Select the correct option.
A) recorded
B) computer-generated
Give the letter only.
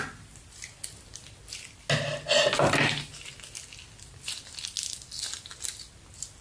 A